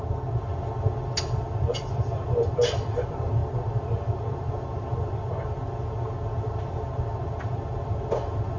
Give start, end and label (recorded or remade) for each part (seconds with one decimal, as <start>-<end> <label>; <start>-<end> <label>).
0.0-8.6 recorded